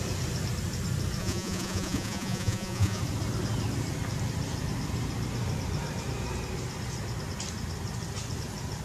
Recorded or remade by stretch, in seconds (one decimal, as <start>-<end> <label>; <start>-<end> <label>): 0.0-1.2 recorded; 1.2-3.0 remade; 3.0-8.8 recorded